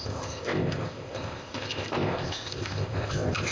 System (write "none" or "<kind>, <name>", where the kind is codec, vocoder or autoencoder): codec, ZipCodec